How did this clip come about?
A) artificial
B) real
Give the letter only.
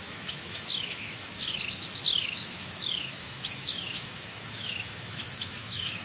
A